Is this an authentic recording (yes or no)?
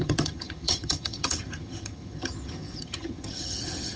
no